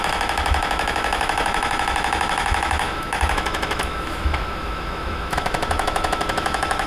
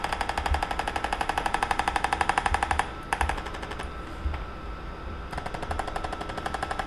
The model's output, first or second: first